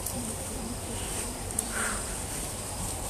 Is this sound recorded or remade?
remade